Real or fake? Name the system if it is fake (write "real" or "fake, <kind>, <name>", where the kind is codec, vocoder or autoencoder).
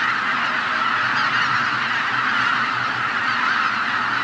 real